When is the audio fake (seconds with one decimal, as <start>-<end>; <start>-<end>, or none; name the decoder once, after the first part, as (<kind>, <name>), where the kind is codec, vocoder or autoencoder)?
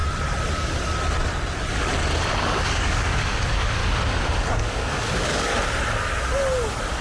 2.4-3.8 (codec, DAC); 4.5-5.5